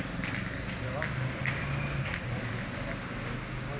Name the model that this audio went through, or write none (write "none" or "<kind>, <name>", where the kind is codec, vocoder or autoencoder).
none